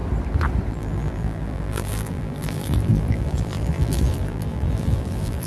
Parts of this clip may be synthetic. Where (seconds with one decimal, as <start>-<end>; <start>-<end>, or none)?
0.7-5.5